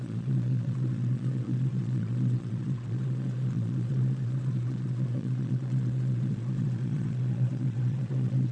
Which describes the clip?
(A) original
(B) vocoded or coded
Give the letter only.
B